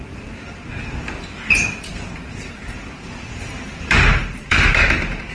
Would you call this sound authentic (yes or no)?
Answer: no